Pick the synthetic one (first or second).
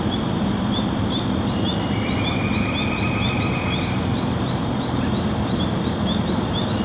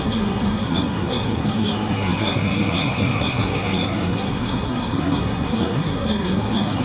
second